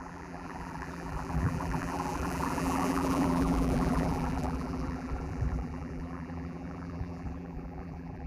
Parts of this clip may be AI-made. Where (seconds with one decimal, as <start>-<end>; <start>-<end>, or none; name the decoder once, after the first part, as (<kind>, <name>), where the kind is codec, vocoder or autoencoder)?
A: 0.0-8.3 (vocoder, BigVGAN v2)